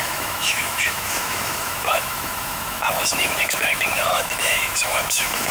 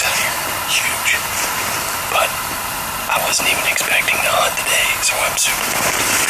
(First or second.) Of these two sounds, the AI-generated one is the first